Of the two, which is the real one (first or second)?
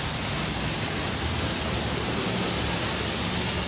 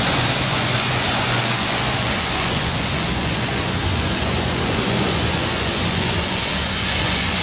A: first